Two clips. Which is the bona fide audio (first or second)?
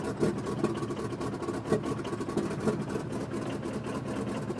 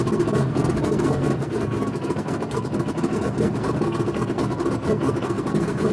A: first